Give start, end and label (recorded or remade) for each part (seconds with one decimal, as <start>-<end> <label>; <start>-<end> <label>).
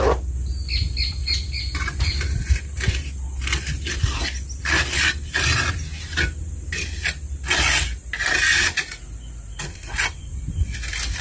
0.0-1.2 recorded; 1.2-3.9 remade; 3.9-11.2 recorded